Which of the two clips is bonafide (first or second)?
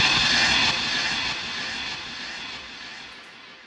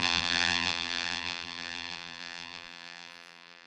first